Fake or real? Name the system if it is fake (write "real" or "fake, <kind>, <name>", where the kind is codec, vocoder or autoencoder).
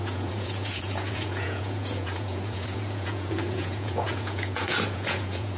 fake, vocoder, Vocos